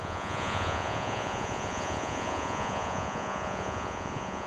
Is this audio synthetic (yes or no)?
yes